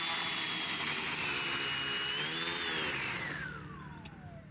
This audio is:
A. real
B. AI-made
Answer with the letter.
A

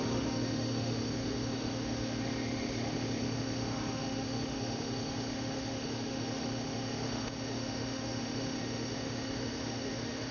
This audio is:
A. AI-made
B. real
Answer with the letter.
A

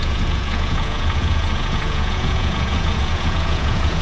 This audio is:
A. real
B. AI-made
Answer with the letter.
B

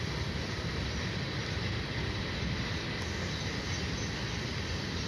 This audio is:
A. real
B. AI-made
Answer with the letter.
A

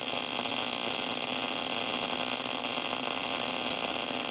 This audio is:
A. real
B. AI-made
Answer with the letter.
A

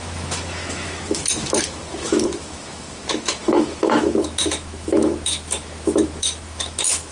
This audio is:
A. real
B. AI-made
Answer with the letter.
B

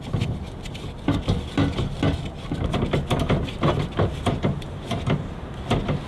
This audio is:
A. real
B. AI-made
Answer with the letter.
A